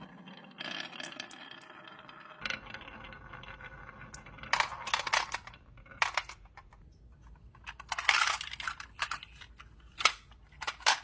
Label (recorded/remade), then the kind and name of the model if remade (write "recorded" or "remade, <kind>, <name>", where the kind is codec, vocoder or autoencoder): recorded